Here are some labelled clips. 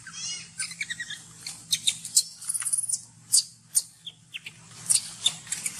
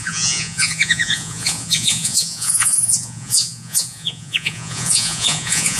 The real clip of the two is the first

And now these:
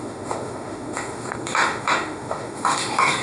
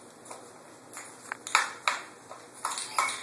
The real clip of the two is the second